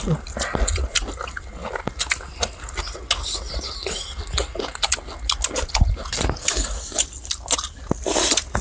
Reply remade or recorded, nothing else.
recorded